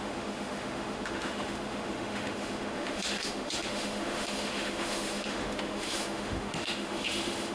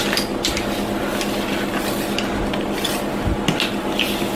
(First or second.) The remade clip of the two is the first